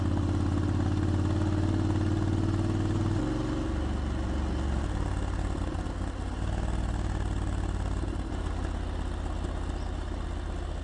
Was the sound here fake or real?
real